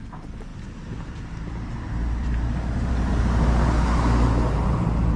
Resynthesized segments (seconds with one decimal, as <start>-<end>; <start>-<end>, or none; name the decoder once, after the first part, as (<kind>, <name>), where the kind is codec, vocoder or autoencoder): 0.5-2.9 (vocoder, BigVGAN v2)